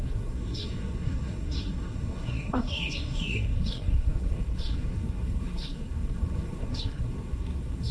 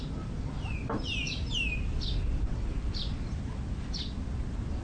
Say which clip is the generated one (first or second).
first